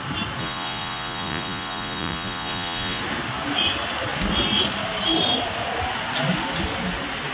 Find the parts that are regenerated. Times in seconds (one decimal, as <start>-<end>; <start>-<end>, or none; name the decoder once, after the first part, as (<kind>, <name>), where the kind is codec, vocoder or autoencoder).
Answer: 0.4-3.0 (vocoder, Vocos)